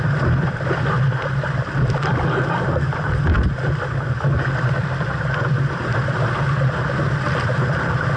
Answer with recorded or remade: remade